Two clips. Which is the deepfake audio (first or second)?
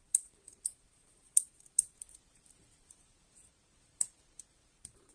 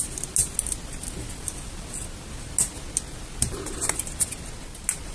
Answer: first